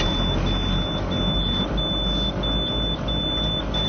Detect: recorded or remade recorded